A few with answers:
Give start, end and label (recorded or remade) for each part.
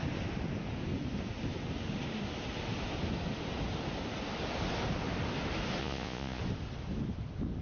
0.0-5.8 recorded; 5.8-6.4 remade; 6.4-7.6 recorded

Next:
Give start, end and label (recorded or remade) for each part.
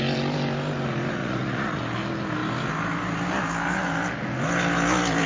0.0-1.2 recorded; 1.2-1.8 remade; 1.8-5.3 recorded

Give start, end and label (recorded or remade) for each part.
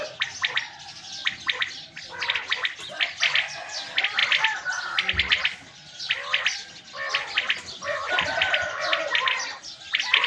0.0-10.3 recorded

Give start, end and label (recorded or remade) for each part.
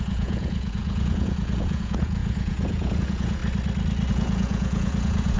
0.0-3.4 remade; 3.4-4.1 recorded; 4.1-5.4 remade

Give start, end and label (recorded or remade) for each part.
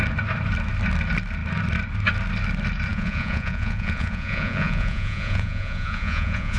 0.0-2.9 recorded; 2.9-6.6 remade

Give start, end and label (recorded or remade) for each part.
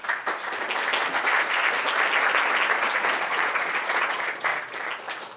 0.0-3.2 recorded; 3.2-4.5 remade; 4.5-5.4 recorded